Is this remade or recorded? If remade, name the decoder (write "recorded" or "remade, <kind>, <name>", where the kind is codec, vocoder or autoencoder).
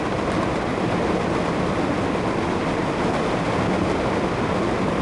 recorded